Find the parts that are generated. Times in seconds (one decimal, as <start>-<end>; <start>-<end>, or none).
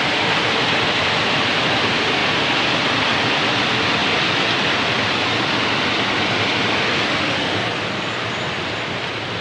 none